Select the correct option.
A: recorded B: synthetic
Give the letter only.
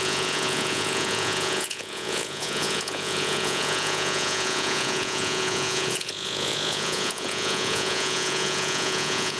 B